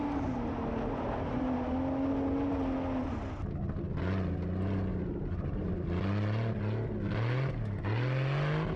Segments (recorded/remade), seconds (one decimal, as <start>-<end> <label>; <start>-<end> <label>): 0.0-4.9 recorded; 4.9-5.7 remade; 5.7-8.8 recorded